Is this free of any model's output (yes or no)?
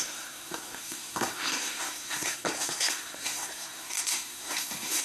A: no